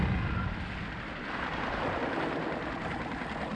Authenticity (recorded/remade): recorded